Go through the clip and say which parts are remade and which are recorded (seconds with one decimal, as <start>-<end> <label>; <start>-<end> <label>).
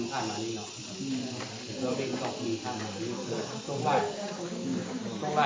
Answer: 0.0-4.0 recorded; 4.0-5.0 remade; 5.0-5.5 recorded